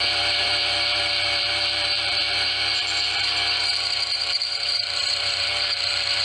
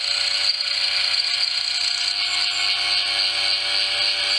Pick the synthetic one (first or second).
first